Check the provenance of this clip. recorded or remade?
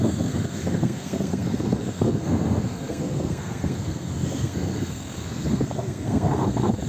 remade